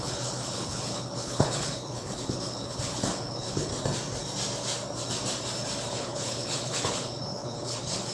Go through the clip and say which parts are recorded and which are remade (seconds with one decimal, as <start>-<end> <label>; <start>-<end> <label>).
0.0-3.7 remade; 3.7-5.9 recorded; 5.9-8.1 remade